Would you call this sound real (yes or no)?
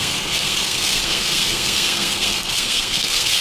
no